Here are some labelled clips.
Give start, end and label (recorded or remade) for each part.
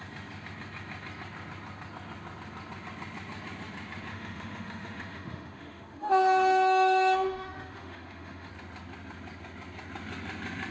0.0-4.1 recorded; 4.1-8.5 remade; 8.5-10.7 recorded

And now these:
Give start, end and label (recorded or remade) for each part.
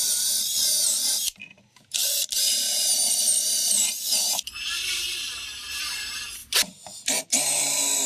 0.0-8.1 recorded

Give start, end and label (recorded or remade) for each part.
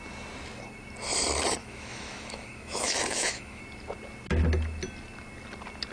0.0-1.6 recorded; 1.6-3.6 remade; 3.6-5.9 recorded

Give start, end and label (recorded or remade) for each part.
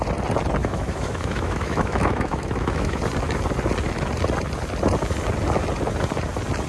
0.0-0.6 recorded; 0.6-3.0 remade; 3.0-6.7 recorded